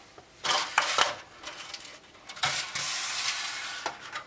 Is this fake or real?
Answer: real